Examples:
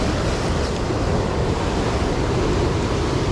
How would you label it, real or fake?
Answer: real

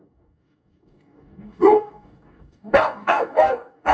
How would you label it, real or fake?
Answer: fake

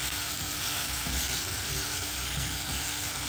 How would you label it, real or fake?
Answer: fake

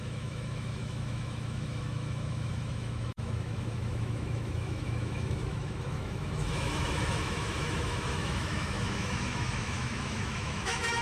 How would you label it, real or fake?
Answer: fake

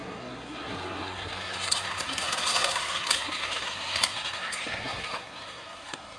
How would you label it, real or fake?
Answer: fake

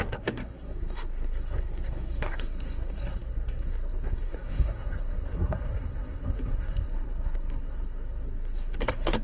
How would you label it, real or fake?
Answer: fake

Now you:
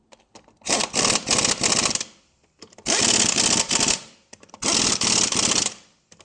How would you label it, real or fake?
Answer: real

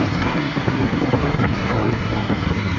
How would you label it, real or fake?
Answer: fake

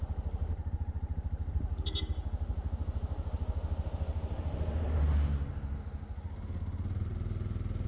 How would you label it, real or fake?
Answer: real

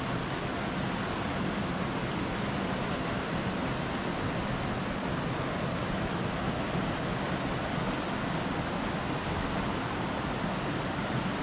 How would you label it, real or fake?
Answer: real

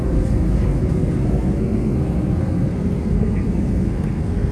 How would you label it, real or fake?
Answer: fake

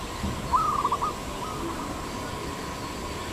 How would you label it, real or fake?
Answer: real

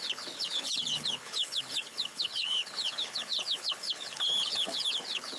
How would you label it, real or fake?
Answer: fake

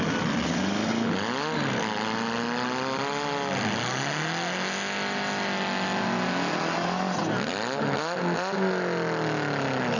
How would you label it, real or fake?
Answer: real